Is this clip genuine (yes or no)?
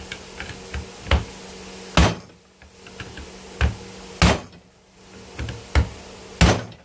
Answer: yes